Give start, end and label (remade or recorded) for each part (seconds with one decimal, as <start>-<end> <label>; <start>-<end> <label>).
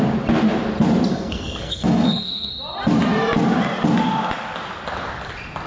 0.0-1.1 recorded; 1.1-2.5 remade; 2.5-5.7 recorded